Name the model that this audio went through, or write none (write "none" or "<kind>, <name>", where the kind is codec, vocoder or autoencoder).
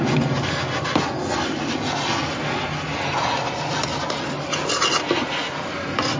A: none